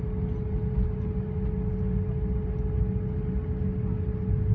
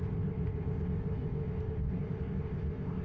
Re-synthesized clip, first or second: second